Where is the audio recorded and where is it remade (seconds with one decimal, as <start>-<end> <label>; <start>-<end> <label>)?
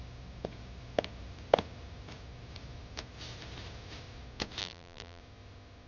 0.0-4.6 recorded; 4.6-5.2 remade; 5.2-5.9 recorded